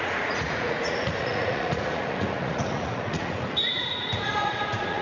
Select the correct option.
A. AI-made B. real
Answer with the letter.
A